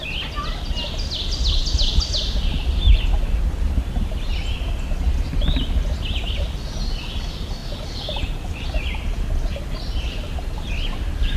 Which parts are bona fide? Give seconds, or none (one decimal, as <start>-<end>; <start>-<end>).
0.0-11.4

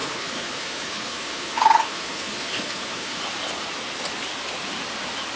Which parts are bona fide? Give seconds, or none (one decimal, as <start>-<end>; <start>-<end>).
3.2-5.4

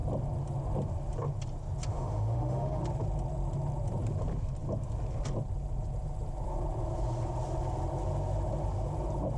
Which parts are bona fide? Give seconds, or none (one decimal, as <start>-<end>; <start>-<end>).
0.0-1.9; 2.8-9.4

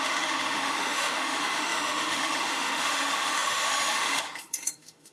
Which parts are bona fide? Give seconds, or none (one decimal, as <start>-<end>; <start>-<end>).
none

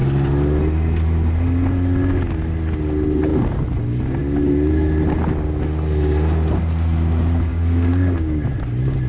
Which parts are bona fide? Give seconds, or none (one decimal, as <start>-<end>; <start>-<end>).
0.0-7.5; 8.5-9.1

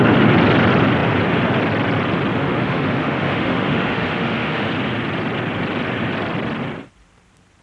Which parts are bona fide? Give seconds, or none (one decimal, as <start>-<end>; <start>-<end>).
0.0-2.3; 4.7-7.6

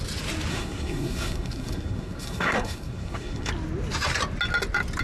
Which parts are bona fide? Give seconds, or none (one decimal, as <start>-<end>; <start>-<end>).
0.0-0.5; 3.5-5.0

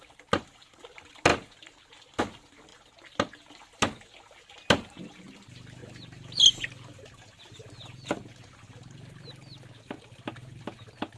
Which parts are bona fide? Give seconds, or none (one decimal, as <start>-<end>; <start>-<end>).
0.0-1.3; 2.2-11.2